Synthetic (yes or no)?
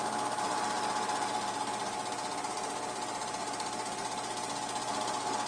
no